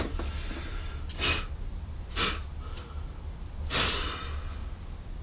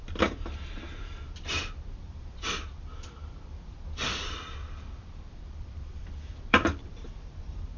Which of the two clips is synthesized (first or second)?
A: second